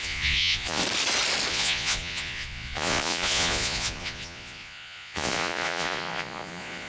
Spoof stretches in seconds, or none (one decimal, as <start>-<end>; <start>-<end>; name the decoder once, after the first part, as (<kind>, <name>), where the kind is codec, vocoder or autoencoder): 0.0-0.8 (vocoder, Vocos); 1.5-6.9